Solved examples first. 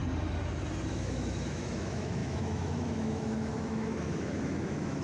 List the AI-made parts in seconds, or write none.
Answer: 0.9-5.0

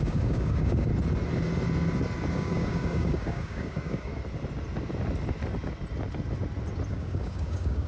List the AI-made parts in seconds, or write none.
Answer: 0.0-0.9; 2.3-4.1; 6.9-7.9

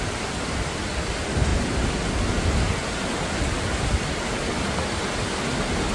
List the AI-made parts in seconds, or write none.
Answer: none

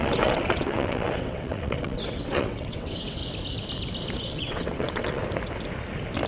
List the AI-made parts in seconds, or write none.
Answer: 0.0-3.2; 4.2-5.2

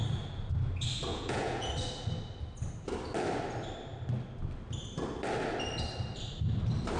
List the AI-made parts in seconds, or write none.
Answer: 1.1-1.7

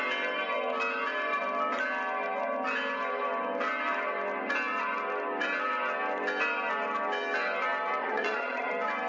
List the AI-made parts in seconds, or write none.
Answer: 8.0-8.7

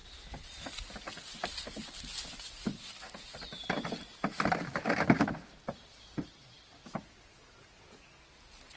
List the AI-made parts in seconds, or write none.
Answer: none

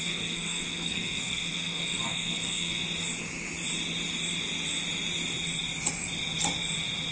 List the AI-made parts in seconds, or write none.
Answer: 0.0-2.8